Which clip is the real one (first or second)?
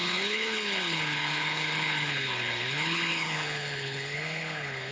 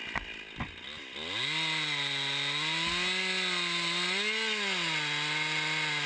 second